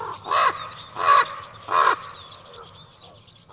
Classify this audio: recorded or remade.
recorded